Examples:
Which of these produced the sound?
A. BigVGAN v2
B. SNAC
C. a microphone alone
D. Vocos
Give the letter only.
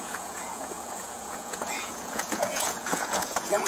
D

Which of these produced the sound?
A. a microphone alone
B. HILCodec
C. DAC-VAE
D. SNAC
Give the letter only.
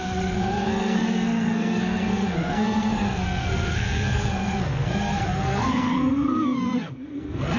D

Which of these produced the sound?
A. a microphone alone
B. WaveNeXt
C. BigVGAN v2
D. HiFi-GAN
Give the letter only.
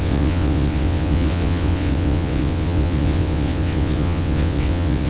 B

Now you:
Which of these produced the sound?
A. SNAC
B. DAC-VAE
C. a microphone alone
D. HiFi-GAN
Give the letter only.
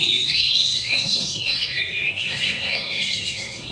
A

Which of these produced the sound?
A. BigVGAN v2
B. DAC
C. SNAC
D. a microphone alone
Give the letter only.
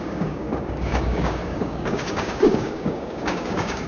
B